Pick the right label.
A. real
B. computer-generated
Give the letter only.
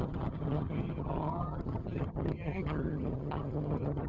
B